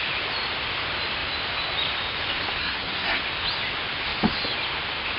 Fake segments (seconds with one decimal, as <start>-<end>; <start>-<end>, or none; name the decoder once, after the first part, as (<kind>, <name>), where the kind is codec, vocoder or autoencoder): 2.6-3.2 (codec, SNAC)